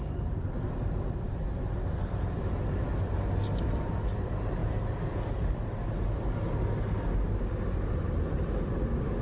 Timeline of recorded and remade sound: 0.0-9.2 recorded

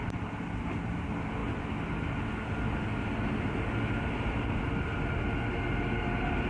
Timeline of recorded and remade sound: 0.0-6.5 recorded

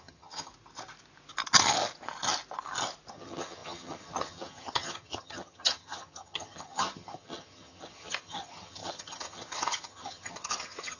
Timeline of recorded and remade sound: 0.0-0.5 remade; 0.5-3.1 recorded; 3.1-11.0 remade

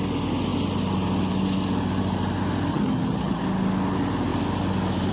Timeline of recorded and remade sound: 0.0-2.7 recorded; 2.7-3.4 remade; 3.4-5.1 recorded

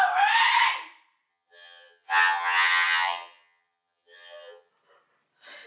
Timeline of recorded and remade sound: 0.0-1.3 recorded; 1.3-4.7 remade; 4.7-5.7 recorded

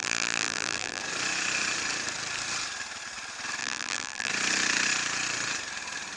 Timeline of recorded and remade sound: 0.0-1.0 remade; 1.0-3.6 recorded; 3.6-4.3 remade; 4.3-6.2 recorded